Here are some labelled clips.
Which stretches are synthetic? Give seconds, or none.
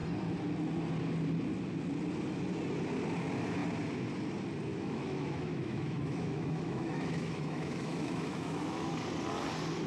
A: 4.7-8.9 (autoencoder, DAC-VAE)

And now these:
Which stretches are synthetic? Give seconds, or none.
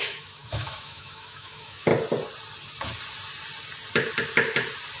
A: 0.0-1.9 (autoencoder, DAC-VAE)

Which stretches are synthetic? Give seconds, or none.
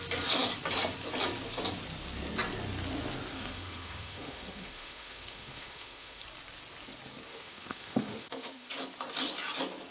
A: 3.3-6.2 (autoencoder, DAC-VAE); 7.3-8.7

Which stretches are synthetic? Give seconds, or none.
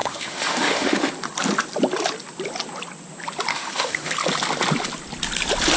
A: 0.0-1.1 (autoencoder, DAC-VAE); 3.5-4.1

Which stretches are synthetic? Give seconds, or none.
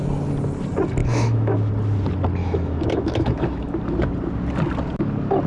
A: 1.0-1.7 (autoencoder, DAC-VAE); 2.4-3.8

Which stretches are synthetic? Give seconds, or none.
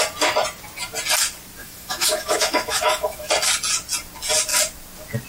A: 1.6-3.3 (autoencoder, DAC-VAE)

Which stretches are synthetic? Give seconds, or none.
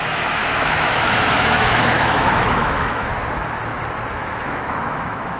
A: 0.0-3.1 (autoencoder, DAC-VAE); 4.1-5.4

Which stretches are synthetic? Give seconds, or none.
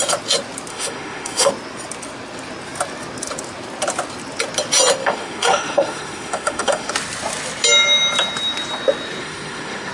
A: 0.7-1.5 (autoencoder, DAC-VAE); 5.0-6.9; 9.2-9.9